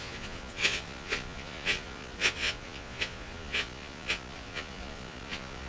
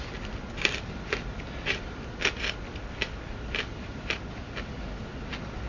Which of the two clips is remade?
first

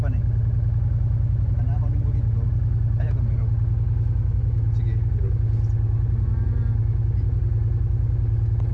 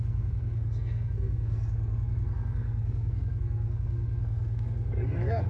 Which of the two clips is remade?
second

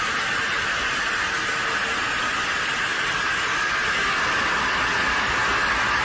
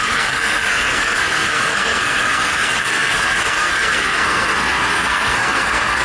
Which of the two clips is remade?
second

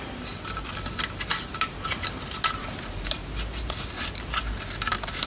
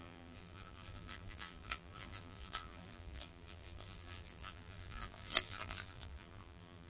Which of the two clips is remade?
second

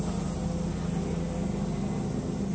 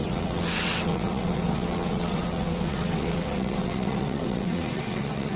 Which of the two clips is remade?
second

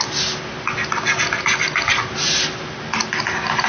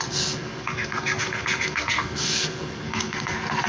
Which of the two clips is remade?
second